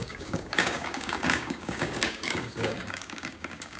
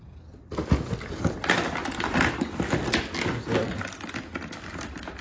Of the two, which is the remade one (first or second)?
first